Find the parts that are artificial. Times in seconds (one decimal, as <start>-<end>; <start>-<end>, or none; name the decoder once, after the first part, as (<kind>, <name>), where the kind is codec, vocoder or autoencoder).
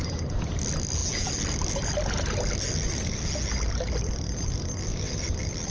none